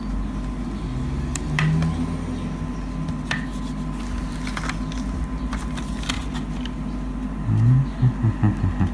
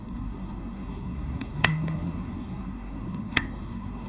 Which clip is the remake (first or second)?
second